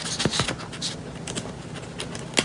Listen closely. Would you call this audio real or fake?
real